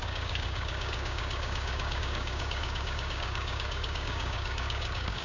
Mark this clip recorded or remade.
remade